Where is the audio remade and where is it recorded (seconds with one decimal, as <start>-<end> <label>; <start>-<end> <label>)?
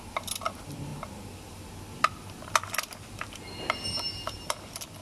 0.0-5.0 recorded